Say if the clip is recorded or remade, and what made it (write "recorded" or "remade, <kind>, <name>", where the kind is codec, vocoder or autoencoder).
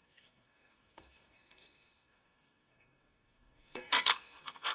remade, codec, SNAC